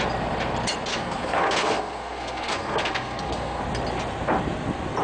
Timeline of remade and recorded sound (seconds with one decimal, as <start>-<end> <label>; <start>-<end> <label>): 0.0-0.9 recorded; 0.9-3.6 remade; 3.6-5.0 recorded